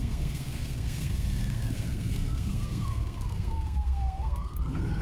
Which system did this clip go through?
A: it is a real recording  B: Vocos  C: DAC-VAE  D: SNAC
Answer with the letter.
D